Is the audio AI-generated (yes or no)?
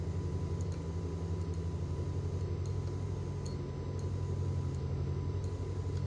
no